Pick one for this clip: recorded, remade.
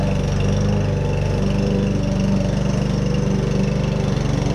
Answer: recorded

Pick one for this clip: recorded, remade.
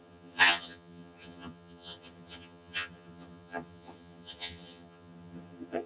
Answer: remade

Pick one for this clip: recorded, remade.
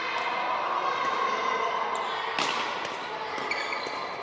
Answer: recorded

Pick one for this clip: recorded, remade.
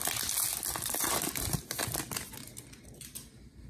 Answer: recorded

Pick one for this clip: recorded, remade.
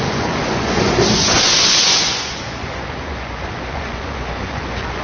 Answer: remade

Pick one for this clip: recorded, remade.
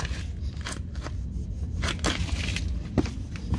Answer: recorded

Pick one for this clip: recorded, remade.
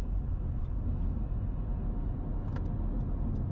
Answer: recorded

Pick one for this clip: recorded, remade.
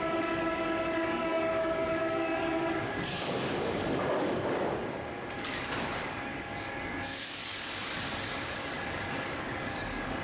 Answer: remade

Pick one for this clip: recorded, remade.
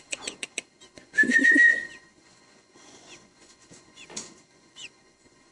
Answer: remade